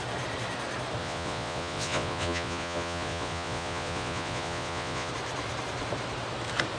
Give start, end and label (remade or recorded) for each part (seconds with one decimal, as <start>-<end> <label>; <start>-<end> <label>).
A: 0.0-1.0 recorded; 1.0-5.1 remade; 5.1-6.8 recorded